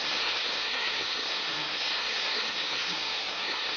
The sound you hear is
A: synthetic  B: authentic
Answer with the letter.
A